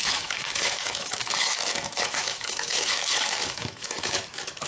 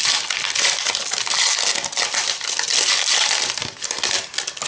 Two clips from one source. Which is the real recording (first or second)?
second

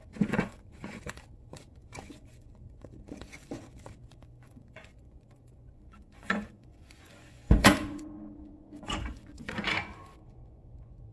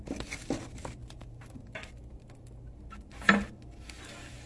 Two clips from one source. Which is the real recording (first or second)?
second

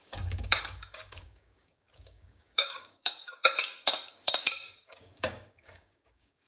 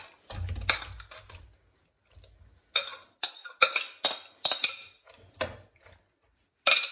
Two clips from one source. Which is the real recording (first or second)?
second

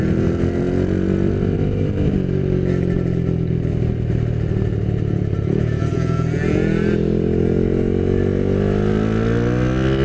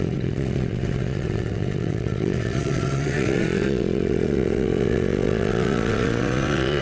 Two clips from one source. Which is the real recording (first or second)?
first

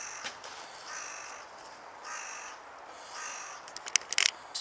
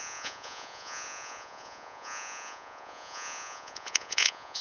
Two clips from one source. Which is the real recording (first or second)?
first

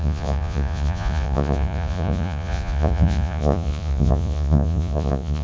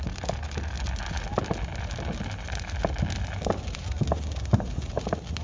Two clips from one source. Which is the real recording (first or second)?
second